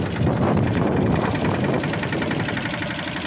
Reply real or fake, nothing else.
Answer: real